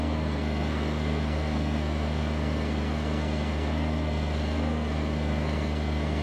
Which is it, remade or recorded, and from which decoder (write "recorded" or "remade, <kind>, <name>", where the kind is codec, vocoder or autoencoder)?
remade, codec, SNAC